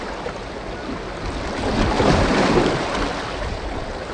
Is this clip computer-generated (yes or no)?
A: no